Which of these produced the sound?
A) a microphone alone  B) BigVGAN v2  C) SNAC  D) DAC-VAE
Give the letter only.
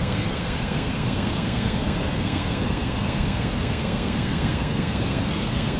C